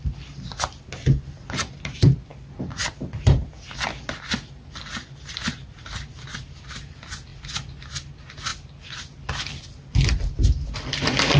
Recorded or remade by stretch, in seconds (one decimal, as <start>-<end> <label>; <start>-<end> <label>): 0.0-11.4 recorded